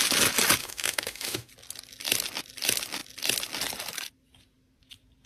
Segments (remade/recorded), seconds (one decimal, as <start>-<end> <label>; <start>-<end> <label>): 0.0-0.6 recorded; 0.6-1.5 remade; 1.5-5.3 recorded